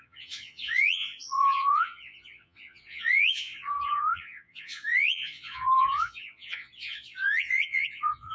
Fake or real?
fake